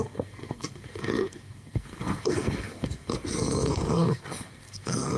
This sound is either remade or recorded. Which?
remade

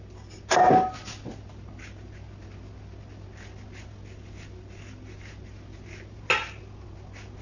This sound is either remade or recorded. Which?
recorded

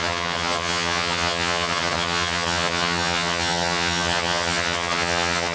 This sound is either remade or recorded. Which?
remade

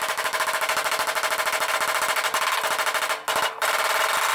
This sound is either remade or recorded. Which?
recorded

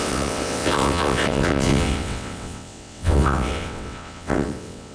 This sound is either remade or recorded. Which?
remade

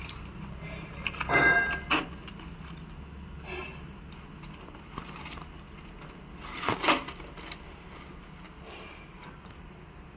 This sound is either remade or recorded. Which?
recorded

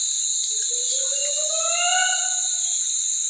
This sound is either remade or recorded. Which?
recorded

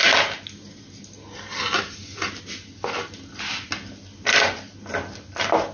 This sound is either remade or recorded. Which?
recorded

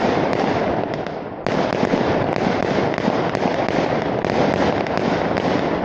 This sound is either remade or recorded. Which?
recorded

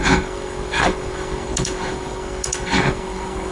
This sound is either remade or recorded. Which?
remade